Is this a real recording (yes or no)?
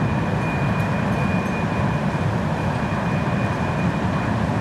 yes